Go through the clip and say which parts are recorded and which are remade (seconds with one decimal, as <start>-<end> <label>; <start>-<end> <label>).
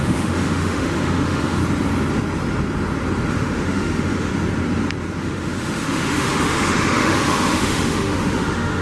0.0-1.6 remade; 1.6-3.3 recorded; 3.3-4.3 remade; 4.3-5.2 recorded; 5.2-8.8 remade